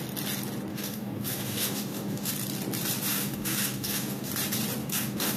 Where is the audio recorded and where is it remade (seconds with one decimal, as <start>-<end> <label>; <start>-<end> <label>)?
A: 0.0-0.7 recorded; 0.7-2.3 remade; 2.3-3.1 recorded; 3.1-4.3 remade; 4.3-4.8 recorded; 4.8-5.4 remade